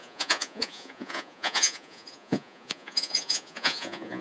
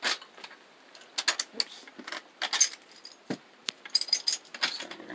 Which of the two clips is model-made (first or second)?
first